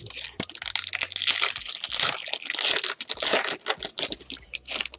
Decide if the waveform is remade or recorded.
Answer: recorded